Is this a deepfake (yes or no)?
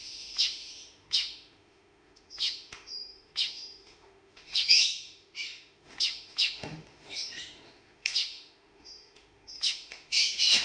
yes